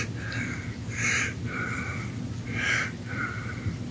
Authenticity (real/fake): real